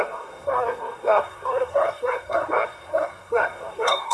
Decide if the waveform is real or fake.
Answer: fake